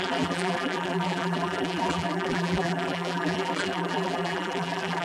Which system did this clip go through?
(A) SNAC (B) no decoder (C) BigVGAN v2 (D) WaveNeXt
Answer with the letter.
C